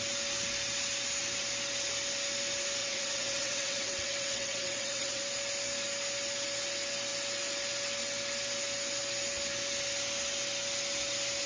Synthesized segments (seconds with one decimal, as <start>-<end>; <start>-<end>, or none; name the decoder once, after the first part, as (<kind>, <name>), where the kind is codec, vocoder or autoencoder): 2.8-5.2 (vocoder, WaveNeXt)